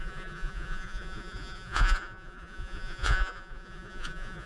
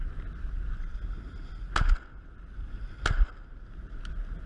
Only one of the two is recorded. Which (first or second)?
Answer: second